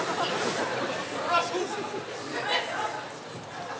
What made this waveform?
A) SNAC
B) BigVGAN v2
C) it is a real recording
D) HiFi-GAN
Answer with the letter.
C